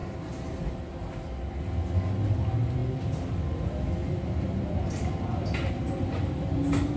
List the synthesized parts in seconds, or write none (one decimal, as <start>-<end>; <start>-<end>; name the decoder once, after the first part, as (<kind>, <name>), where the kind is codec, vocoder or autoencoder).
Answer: none